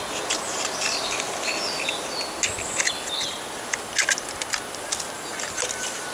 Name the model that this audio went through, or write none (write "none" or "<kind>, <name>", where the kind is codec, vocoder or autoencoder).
none